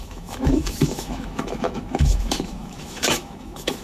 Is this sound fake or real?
fake